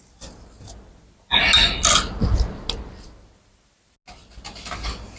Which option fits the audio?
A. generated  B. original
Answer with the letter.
B